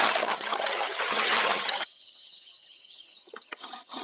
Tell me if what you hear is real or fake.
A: fake